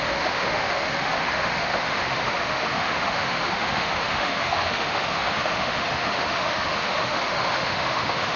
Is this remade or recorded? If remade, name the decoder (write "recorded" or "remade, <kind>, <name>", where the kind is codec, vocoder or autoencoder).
remade, autoencoder, DAC-VAE